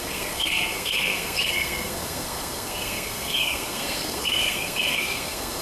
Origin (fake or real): fake